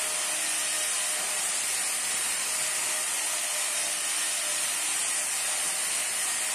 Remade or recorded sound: recorded